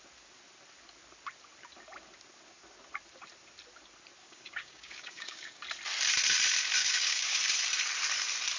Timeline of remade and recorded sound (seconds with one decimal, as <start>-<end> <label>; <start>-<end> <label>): 0.0-4.2 recorded; 4.2-5.6 remade; 5.6-6.8 recorded; 6.8-7.4 remade; 7.4-8.6 recorded